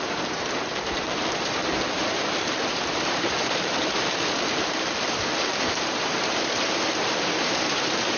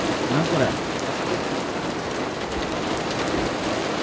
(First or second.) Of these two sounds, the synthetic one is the first